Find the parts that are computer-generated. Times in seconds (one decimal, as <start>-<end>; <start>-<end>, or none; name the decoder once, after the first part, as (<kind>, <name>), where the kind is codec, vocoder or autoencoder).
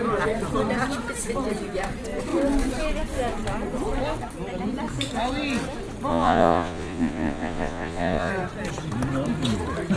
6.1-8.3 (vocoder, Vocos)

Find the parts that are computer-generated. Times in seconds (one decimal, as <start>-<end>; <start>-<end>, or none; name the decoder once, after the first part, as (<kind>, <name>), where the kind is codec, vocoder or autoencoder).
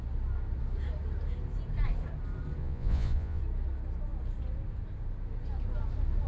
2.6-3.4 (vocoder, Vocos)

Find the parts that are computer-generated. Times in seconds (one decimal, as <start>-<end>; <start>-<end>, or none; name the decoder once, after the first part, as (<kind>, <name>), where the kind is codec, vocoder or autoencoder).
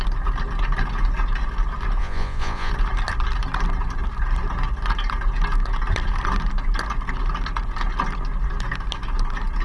2.0-2.7 (vocoder, Vocos)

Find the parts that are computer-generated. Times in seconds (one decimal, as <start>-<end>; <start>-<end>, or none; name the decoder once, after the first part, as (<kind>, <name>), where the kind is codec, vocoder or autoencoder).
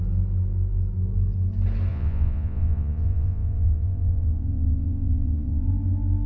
1.9-5.7 (vocoder, Vocos)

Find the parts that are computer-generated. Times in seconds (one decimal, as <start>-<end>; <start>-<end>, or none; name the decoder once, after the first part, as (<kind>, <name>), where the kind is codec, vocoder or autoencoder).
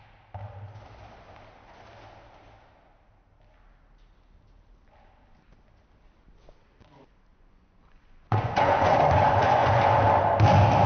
7.3-10.0 (vocoder, Vocos)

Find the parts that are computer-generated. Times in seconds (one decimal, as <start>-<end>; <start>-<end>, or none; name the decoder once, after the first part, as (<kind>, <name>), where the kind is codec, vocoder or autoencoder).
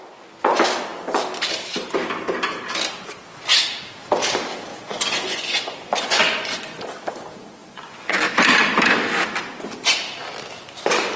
4.7-6.8 (vocoder, Vocos); 7.6-8.2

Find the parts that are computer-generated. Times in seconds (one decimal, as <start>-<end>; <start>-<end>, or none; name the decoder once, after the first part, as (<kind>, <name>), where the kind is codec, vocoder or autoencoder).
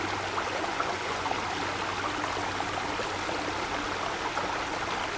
0.7-1.3 (vocoder, Vocos)